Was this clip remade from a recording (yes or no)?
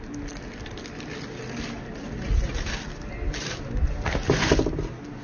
no